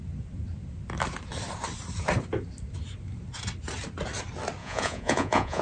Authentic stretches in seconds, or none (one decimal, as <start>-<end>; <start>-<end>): 0.0-4.6